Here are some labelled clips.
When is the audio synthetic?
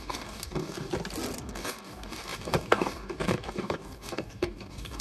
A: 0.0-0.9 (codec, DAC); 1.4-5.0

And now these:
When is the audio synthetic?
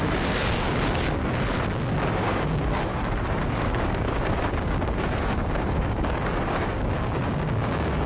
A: 0.0-1.2 (codec, DAC); 2.0-2.9; 3.5-8.1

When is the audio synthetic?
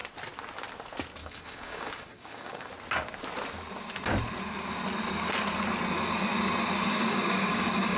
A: 1.2-2.7 (codec, DAC); 6.9-8.0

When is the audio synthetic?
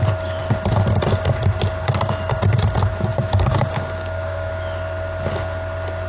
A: 1.8-2.4 (codec, DAC); 3.1-4.5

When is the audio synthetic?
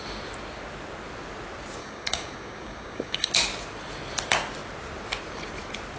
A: 1.8-3.3 (codec, DAC)